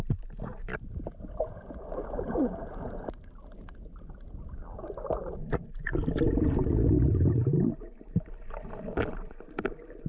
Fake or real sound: real